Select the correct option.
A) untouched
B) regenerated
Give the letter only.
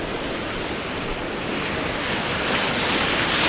A